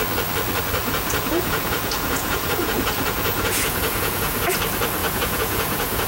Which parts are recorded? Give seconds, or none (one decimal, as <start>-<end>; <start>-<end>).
0.0-0.8; 4.5-5.0